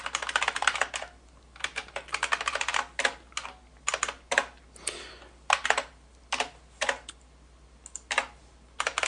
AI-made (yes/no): no